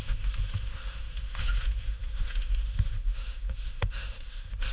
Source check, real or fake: fake